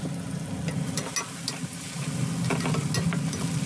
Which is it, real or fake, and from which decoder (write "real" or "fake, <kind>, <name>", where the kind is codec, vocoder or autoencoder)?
real